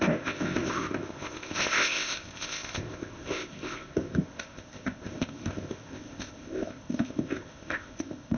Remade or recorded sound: remade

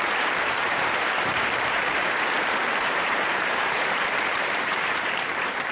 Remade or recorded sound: remade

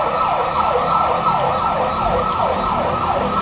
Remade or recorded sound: recorded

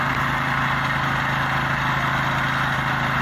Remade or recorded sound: recorded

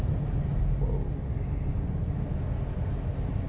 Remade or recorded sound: recorded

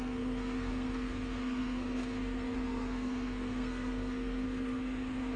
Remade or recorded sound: remade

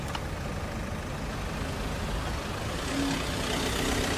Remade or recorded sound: recorded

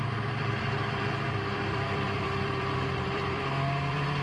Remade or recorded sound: remade